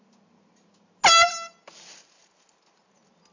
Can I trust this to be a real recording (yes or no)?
yes